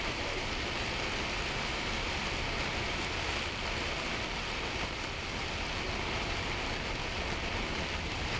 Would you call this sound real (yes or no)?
no